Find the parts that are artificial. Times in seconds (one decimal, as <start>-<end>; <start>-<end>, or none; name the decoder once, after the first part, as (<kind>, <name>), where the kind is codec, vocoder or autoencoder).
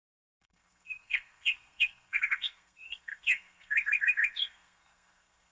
0.0-5.5 (codec, SNAC)